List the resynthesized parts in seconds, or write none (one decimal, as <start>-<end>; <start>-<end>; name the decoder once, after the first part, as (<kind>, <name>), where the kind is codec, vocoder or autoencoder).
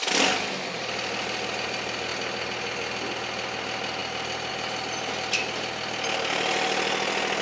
none